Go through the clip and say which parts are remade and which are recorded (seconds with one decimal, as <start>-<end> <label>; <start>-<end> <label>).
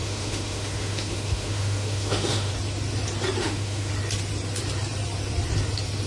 0.0-2.5 remade; 2.5-3.4 recorded; 3.4-3.9 remade; 3.9-6.1 recorded